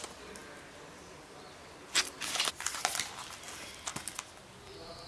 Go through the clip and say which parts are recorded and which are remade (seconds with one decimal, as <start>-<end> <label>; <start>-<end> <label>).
0.0-5.1 recorded